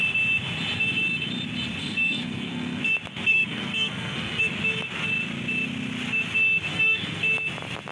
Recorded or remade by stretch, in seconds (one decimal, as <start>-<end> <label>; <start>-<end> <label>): 0.0-1.8 recorded; 1.8-2.8 remade; 2.8-3.3 recorded; 3.3-4.4 remade; 4.4-6.7 recorded; 6.7-7.2 remade; 7.2-7.9 recorded